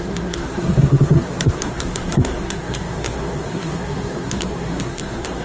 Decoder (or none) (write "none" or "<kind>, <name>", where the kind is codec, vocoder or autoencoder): codec, SNAC